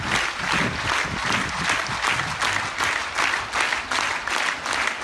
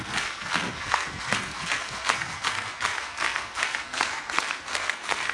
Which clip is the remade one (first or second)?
second